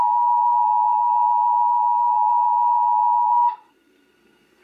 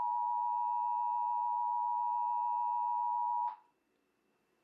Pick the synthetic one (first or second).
first